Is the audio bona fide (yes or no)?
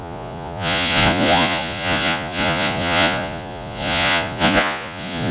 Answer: no